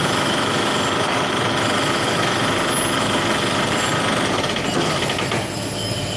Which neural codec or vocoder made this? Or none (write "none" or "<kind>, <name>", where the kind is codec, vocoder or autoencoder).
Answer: none